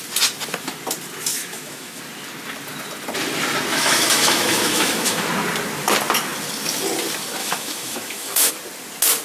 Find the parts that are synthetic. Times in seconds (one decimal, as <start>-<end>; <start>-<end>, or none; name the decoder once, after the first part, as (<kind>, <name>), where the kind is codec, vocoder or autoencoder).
1.3-2.0 (autoencoder, DAC-VAE); 3.7-5.2; 7.4-8.5